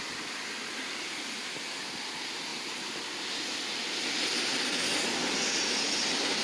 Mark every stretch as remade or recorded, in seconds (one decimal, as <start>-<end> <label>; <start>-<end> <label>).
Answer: 0.0-6.4 recorded